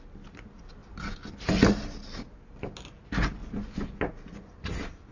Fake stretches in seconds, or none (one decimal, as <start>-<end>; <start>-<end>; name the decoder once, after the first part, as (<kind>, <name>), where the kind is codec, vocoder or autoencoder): 3.4-4.0 (vocoder, Vocos)